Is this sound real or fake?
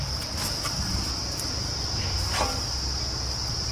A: real